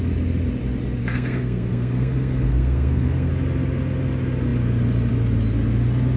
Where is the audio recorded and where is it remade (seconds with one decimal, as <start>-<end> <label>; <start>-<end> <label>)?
0.0-1.0 recorded; 1.0-3.3 remade; 3.3-6.2 recorded